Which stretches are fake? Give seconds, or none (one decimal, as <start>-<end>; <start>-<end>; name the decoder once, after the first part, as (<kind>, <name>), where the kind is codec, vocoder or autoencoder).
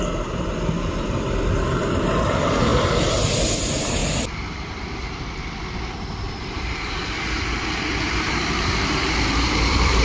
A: 0.0-4.0 (vocoder, BigVGAN v2); 6.3-10.0